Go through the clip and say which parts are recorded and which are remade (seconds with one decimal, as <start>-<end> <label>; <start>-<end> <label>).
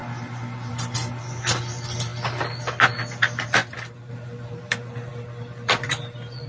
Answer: 0.0-3.6 remade; 3.6-4.1 recorded; 4.1-6.5 remade